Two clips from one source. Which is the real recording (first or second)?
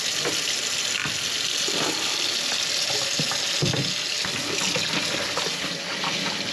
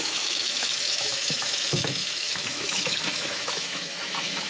first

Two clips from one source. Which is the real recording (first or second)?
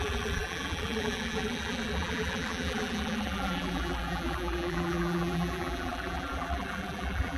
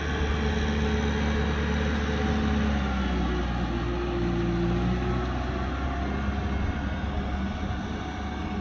second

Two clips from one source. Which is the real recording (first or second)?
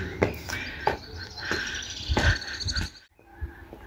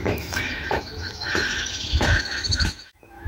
first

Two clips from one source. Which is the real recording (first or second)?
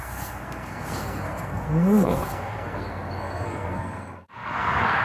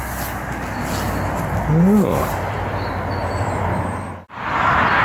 second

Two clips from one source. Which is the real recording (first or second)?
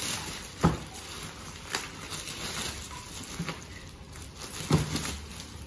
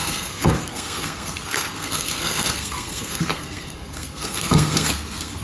first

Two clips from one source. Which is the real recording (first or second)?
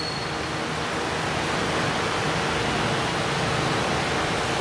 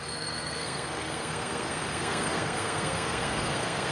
first